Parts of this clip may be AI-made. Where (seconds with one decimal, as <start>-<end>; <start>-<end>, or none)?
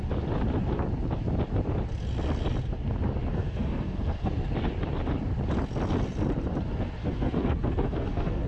3.3-4.3; 7.0-8.5